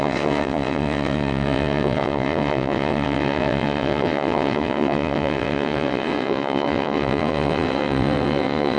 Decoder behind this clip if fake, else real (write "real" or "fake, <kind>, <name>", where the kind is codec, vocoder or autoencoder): fake, vocoder, WaveNeXt